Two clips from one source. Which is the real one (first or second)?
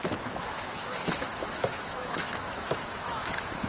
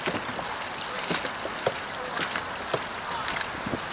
second